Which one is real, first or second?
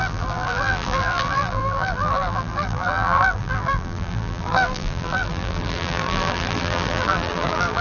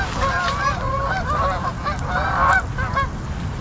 second